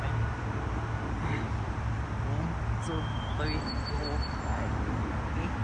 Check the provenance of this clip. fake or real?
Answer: real